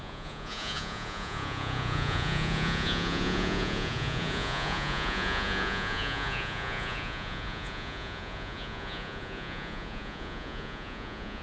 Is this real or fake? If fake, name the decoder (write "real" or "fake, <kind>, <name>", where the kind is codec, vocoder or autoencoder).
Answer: fake, vocoder, Vocos